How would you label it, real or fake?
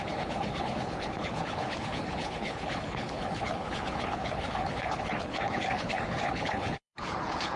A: fake